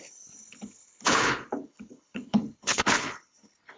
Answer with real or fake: fake